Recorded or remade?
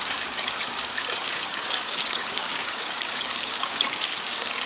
remade